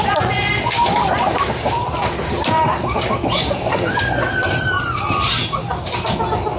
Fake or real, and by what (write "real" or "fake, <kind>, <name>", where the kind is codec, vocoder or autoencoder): real